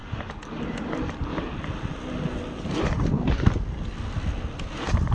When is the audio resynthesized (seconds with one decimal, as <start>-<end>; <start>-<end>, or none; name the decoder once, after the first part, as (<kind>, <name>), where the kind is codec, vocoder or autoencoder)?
none